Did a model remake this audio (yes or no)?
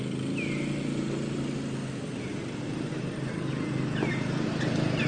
no